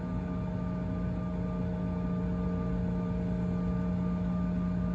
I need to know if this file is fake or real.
real